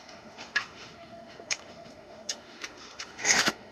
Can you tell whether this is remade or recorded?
remade